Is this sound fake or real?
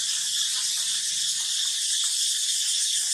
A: real